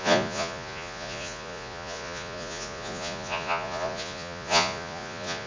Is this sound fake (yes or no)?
yes